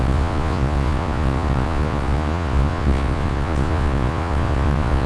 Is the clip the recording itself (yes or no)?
no